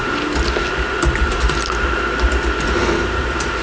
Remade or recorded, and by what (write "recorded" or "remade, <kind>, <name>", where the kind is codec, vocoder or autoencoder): recorded